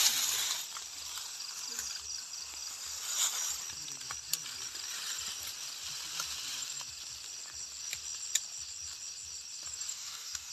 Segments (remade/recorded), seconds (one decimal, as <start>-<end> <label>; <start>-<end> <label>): 0.0-9.9 recorded; 9.9-10.5 remade